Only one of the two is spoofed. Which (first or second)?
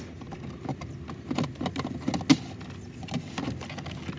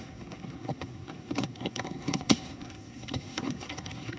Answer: second